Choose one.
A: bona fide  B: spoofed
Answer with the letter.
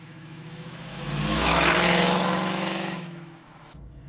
B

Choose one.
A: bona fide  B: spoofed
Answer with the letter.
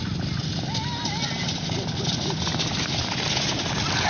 A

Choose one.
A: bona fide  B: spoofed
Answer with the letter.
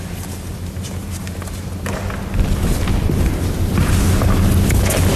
A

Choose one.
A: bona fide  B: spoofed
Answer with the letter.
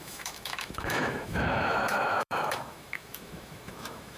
B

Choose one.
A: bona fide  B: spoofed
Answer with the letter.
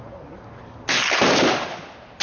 A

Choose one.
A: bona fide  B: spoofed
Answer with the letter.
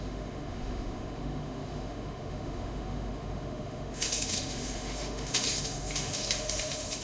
B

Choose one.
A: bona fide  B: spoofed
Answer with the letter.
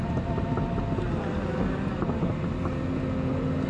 A